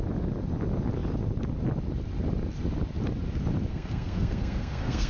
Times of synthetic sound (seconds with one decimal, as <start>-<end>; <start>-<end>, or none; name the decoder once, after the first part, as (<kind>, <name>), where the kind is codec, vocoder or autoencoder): 3.7-5.1 (codec, SNAC)